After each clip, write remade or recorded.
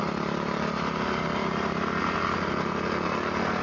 recorded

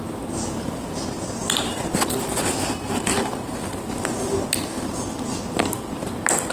recorded